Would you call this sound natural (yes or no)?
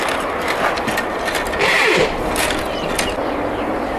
yes